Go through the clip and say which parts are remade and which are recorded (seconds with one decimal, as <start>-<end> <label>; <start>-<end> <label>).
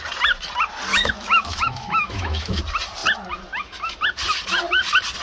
0.0-0.9 recorded; 0.9-2.6 remade; 2.6-5.2 recorded